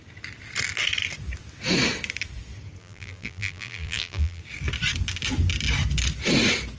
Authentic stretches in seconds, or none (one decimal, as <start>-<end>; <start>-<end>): 0.0-2.8; 4.4-6.8